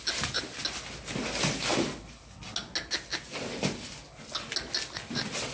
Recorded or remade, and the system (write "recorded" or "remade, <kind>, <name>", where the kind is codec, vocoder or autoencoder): recorded